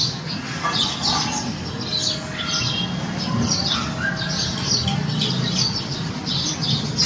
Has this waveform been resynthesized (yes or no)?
no